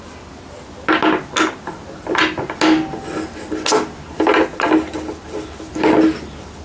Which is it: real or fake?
real